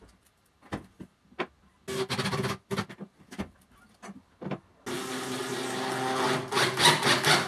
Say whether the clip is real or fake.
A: real